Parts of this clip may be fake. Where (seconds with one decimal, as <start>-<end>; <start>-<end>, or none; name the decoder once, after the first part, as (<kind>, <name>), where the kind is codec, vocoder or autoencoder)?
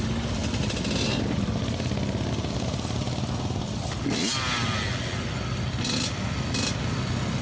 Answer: none